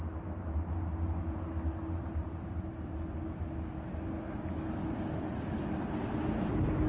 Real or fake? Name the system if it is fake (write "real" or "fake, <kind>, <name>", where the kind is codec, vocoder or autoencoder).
real